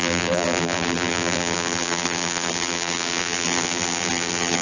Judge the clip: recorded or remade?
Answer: remade